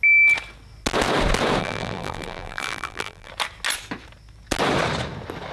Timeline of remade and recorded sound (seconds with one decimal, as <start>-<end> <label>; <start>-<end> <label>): 0.0-1.6 recorded; 1.6-3.3 remade; 3.3-5.5 recorded

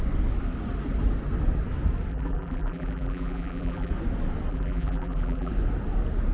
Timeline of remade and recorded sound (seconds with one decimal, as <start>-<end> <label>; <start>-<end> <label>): 0.0-2.1 recorded; 2.1-3.9 remade; 3.9-4.5 recorded; 4.5-5.5 remade; 5.5-6.3 recorded